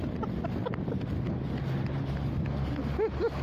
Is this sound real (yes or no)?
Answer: yes